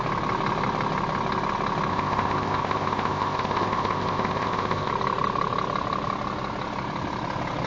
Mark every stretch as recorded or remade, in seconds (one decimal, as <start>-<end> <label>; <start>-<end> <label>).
0.0-1.9 recorded; 1.9-4.9 remade; 4.9-7.7 recorded